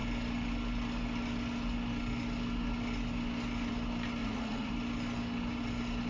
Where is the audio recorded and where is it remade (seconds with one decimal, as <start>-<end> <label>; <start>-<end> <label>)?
0.0-4.2 recorded; 4.2-4.7 remade; 4.7-6.1 recorded